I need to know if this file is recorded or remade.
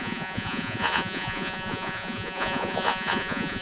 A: remade